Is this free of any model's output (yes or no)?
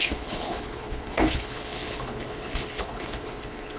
no